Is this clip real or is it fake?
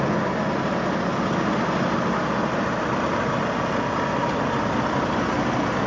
real